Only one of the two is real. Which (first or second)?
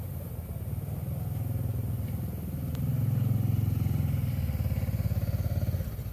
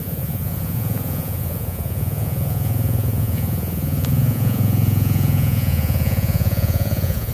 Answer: first